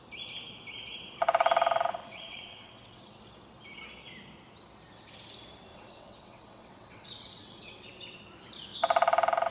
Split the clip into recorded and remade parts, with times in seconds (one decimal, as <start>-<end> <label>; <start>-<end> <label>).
0.0-2.0 recorded; 2.0-3.2 remade; 3.2-5.7 recorded; 5.7-8.2 remade; 8.2-9.5 recorded